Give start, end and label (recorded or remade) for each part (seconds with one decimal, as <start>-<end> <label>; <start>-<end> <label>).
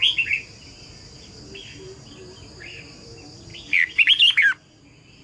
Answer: 0.0-5.2 recorded